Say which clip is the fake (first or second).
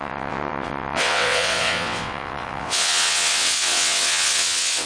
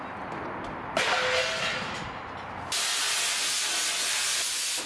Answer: first